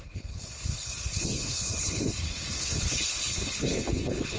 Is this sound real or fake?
fake